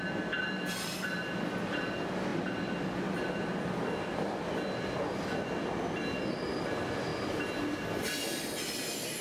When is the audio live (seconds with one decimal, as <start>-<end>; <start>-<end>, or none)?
0.0-9.2